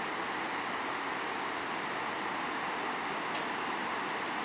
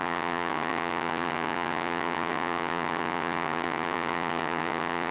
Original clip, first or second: first